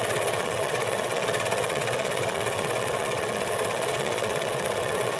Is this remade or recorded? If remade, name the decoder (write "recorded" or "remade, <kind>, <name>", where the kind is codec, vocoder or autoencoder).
remade, vocoder, WaveNeXt